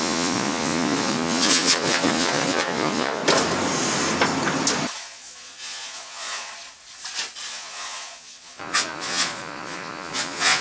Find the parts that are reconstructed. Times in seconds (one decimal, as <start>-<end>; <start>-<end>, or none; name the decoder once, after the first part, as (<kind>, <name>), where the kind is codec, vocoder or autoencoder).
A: 0.0-3.2 (vocoder, Vocos); 5.0-6.5; 7.5-10.6